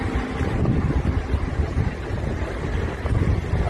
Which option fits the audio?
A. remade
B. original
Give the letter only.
B